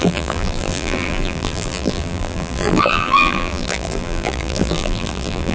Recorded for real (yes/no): no